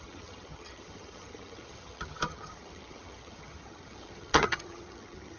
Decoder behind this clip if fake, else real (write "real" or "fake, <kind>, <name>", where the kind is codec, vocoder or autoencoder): fake, vocoder, HiFi-GAN